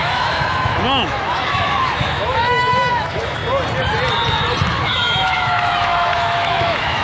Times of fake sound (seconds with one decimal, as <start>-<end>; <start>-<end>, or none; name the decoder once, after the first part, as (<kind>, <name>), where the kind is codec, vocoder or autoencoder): 0.0-3.4 (autoencoder, DAC-VAE); 4.7-7.0